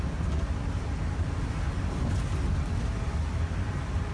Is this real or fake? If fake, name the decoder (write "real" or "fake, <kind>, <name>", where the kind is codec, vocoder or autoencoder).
real